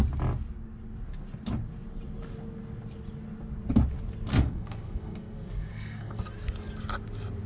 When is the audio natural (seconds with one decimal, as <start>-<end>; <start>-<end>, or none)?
0.0-4.3; 6.2-7.5